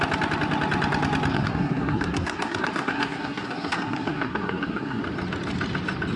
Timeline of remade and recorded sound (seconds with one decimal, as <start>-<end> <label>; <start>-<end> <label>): 0.0-1.3 recorded; 1.3-5.0 remade; 5.0-6.2 recorded